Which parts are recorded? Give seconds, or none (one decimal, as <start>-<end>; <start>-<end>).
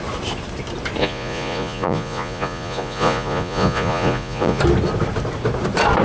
0.0-1.0; 4.6-6.0